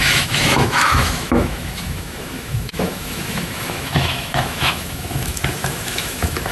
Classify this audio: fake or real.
fake